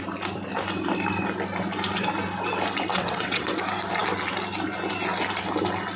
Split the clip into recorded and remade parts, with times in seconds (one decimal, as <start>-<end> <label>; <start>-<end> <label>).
0.0-2.9 recorded; 2.9-3.5 remade; 3.5-6.0 recorded